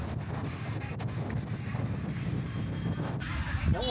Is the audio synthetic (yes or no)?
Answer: no